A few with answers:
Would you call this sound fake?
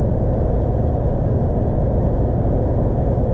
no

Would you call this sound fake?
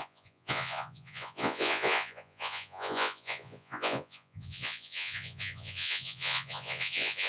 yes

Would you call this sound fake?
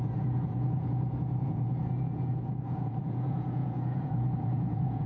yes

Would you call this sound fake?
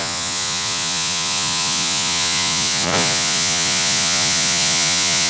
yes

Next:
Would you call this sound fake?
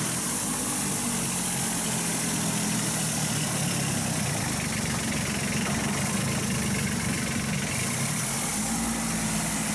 no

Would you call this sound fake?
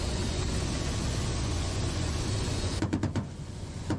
yes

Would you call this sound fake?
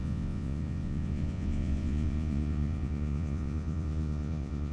yes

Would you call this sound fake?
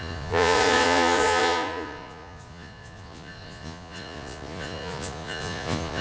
yes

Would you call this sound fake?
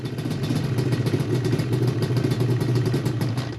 no